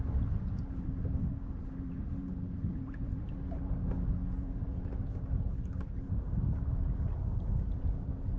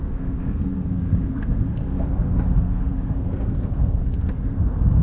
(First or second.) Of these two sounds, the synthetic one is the second